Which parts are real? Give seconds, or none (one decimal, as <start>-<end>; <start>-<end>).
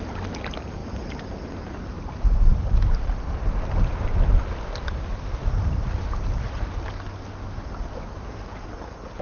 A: 0.0-2.5; 5.6-9.2